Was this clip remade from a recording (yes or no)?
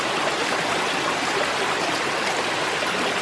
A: no